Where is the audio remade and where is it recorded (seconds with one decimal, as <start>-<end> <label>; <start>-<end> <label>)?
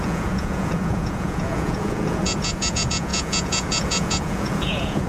0.0-5.1 remade